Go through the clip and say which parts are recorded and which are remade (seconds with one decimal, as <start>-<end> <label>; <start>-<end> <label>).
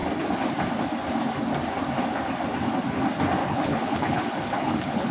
0.0-3.4 recorded; 3.4-5.1 remade